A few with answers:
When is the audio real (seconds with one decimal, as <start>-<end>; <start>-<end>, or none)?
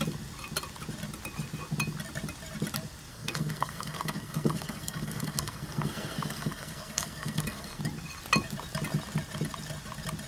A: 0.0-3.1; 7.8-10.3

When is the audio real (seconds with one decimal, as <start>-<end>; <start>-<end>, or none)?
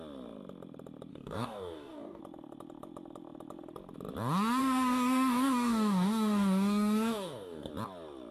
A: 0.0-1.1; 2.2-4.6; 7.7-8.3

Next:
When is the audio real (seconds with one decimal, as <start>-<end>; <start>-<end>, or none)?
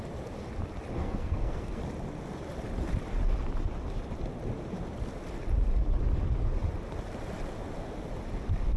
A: 0.0-1.0; 1.8-8.8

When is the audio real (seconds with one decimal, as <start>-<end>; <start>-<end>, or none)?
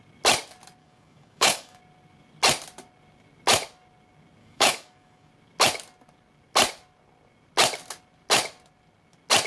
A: 0.0-0.8; 1.8-4.4; 5.3-9.5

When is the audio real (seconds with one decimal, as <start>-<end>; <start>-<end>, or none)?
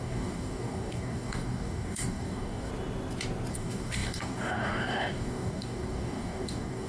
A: 2.7-3.5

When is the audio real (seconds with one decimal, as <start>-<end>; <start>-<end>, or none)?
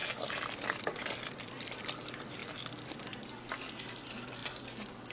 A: 0.0-0.5; 2.4-3.5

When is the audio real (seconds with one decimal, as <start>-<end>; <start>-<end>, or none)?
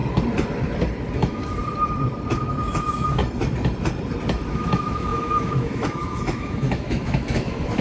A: 0.0-1.1; 1.6-2.4; 3.2-4.5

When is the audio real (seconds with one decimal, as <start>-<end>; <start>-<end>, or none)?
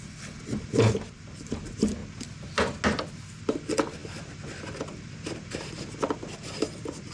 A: 2.0-3.4